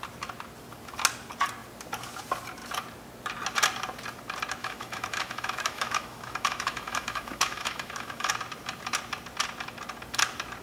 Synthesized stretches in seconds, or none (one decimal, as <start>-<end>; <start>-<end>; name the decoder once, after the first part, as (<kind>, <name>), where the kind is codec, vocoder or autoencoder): 4.6-8.3 (autoencoder, DAC-VAE)